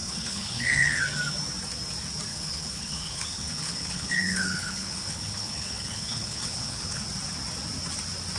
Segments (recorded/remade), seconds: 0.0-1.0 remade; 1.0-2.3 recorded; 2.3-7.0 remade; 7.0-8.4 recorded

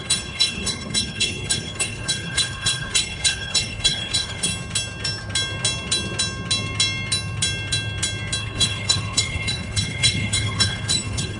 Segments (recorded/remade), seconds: 0.0-4.5 remade; 4.5-8.4 recorded; 8.4-11.4 remade

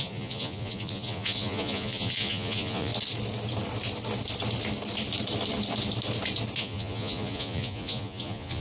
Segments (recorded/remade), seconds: 0.0-2.9 remade; 2.9-6.6 recorded; 6.6-8.6 remade

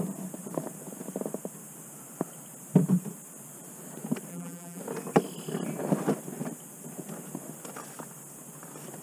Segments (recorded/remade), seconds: 0.0-4.3 recorded; 4.3-4.8 remade; 4.8-9.0 recorded

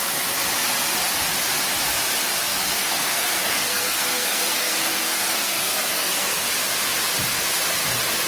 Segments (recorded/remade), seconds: 0.0-2.5 recorded; 2.5-6.5 remade; 6.5-8.3 recorded

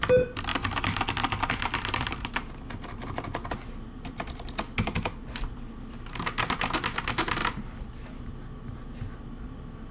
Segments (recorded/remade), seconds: 0.0-9.9 recorded

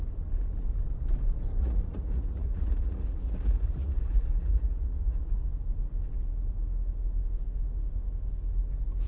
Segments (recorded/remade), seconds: 0.0-1.6 recorded; 1.6-5.5 remade; 5.5-9.1 recorded

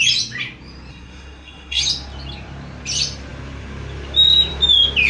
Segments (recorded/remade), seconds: 0.0-0.9 recorded; 0.9-1.8 remade; 1.8-5.1 recorded